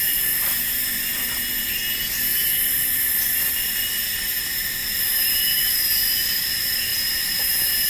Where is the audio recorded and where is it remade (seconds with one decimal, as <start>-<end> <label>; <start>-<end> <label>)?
0.0-4.8 recorded; 4.8-5.7 remade; 5.7-6.9 recorded; 6.9-7.5 remade; 7.5-7.9 recorded